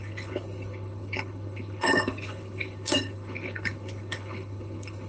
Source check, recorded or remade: remade